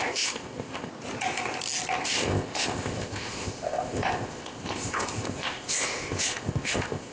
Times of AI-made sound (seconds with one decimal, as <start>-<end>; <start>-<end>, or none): 0.0-0.9; 2.0-7.1